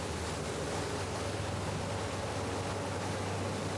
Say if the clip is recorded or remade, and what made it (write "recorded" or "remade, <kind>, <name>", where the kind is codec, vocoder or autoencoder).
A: recorded